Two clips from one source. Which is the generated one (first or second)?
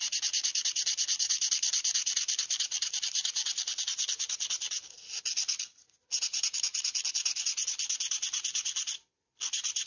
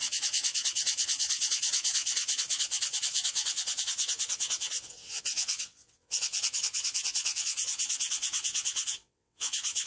second